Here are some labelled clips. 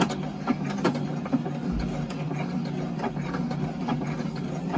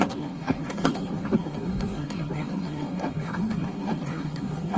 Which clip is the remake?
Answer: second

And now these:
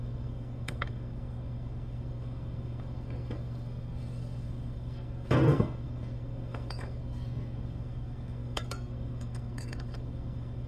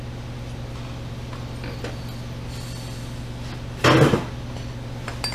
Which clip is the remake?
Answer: first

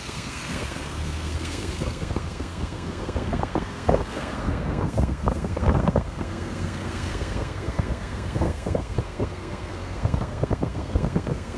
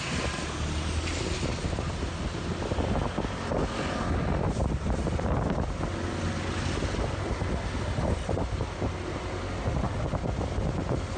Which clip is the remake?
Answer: first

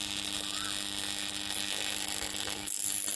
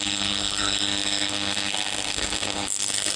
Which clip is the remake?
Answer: second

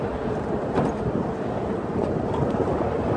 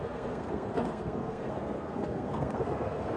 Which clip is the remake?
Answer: second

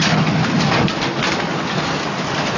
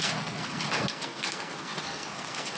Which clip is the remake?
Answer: second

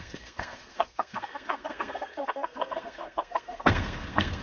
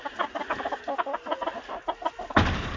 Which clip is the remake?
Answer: first